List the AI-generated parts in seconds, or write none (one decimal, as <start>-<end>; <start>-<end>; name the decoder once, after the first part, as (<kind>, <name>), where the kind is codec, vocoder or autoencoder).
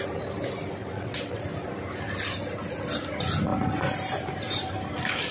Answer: 0.8-1.4 (vocoder, WaveNeXt)